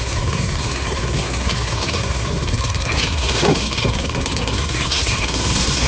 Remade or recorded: remade